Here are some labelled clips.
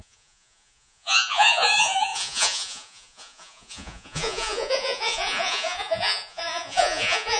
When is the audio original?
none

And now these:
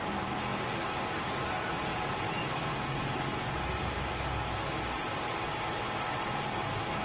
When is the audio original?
0.0-7.0

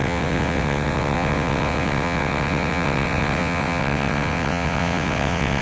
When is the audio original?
none